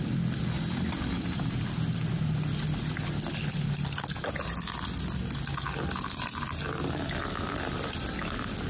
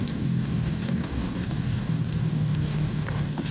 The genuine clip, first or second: first